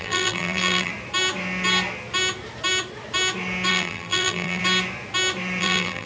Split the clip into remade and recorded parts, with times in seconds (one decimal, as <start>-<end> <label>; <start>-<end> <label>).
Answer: 0.0-0.9 remade; 0.9-3.7 recorded; 3.7-4.6 remade; 4.6-5.6 recorded; 5.6-6.1 remade